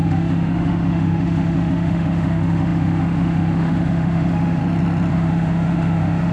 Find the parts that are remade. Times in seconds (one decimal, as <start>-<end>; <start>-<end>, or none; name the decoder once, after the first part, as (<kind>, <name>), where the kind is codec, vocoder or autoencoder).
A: 0.0-4.6 (autoencoder, DAC-VAE); 5.1-6.3